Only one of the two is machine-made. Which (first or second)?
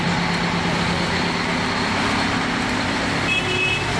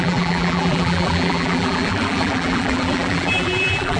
second